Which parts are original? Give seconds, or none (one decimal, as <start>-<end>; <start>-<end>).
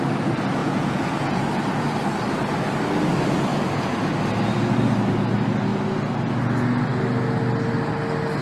0.0-0.6; 1.4-3.5; 4.1-8.4